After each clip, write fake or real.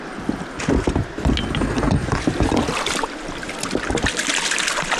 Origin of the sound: real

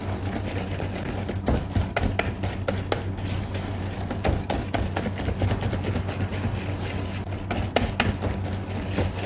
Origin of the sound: real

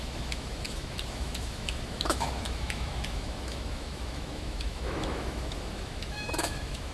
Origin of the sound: fake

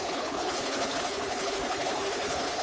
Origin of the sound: fake